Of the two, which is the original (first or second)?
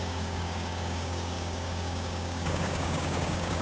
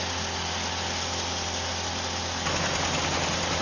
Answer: second